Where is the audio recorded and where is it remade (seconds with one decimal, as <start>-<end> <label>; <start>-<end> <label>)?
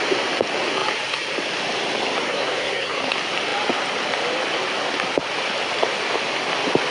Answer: 0.0-2.3 recorded; 2.3-3.1 remade; 3.1-6.9 recorded